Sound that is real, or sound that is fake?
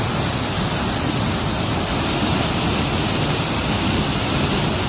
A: real